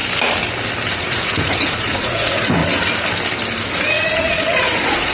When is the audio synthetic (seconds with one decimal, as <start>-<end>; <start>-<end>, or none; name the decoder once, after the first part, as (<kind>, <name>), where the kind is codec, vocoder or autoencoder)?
0.9-2.6 (vocoder, Vocos); 3.7-5.1